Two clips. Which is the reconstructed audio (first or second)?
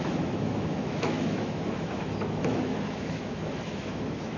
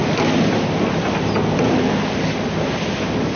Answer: first